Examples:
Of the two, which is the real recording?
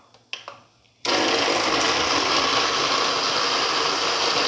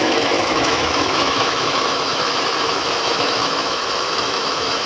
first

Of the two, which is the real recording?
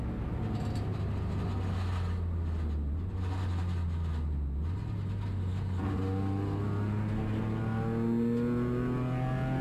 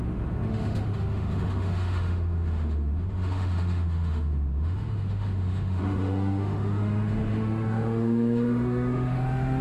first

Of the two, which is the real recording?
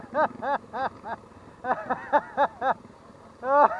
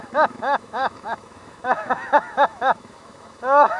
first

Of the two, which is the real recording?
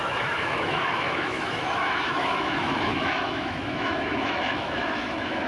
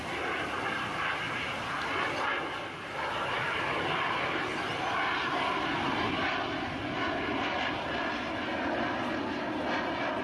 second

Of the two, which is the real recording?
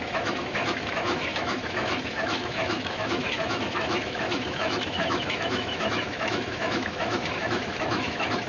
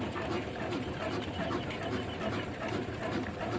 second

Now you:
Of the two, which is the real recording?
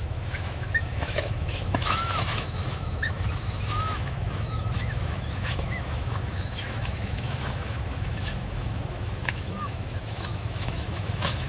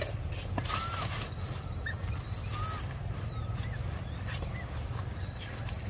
second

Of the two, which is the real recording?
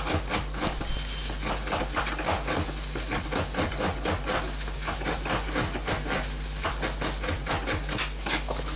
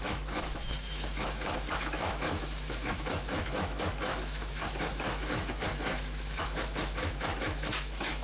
first